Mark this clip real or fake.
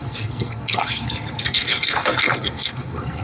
fake